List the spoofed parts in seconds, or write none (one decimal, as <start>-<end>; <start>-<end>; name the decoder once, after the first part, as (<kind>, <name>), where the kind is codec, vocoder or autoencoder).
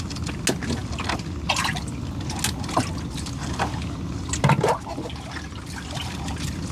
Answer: none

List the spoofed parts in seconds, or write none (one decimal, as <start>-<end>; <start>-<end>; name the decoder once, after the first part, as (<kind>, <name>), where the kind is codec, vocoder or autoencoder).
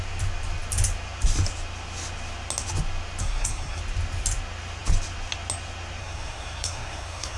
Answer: 3.2-3.8 (codec, SNAC); 6.0-7.4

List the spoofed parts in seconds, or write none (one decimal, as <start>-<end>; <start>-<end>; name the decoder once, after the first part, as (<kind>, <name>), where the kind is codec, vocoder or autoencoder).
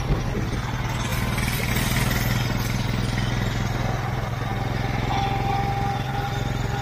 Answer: none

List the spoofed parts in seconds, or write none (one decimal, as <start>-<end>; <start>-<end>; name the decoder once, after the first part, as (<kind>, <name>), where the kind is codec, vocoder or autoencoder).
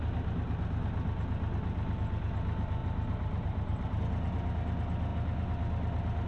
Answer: 2.8-4.0 (vocoder, BigVGAN v2)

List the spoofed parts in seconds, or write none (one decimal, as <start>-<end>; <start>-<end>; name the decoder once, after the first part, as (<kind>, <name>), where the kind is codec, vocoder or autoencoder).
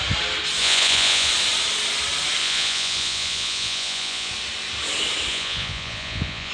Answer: 0.6-1.3 (vocoder, Vocos); 2.4-4.3; 5.3-6.5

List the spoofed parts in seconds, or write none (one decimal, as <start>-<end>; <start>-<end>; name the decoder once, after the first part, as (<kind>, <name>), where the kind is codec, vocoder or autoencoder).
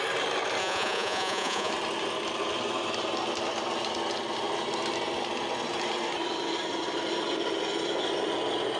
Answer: 0.6-1.7 (vocoder, Vocos)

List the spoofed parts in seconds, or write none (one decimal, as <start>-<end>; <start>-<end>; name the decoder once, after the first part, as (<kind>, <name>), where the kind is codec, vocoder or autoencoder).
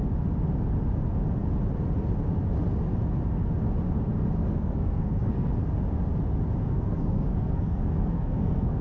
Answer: 4.4-5.5 (codec, SNAC); 6.6-8.8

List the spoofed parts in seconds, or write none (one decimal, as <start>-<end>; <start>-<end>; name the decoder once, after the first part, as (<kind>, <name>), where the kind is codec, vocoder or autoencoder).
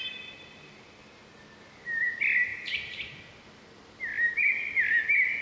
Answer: none